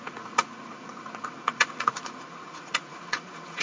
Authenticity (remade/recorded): remade